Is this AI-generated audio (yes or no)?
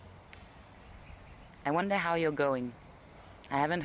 no